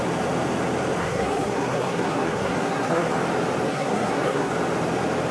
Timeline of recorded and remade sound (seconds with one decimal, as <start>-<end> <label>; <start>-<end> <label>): 0.0-1.0 recorded; 1.0-3.1 remade; 3.1-3.7 recorded; 3.7-4.5 remade; 4.5-5.3 recorded